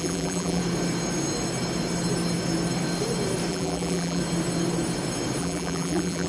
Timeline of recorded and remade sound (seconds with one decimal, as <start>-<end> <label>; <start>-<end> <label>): 0.0-0.6 remade; 0.6-3.5 recorded; 3.5-4.2 remade; 4.2-5.4 recorded; 5.4-6.3 remade